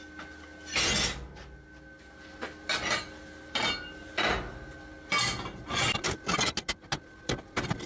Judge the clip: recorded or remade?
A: recorded